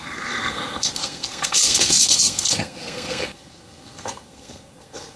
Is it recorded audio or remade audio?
remade